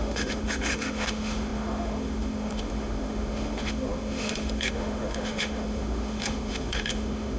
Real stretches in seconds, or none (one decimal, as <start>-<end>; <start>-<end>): none